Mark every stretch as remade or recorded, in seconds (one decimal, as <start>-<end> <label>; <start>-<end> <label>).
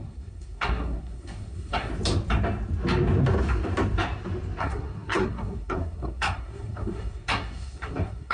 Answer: 0.0-1.9 remade; 1.9-4.6 recorded; 4.6-8.3 remade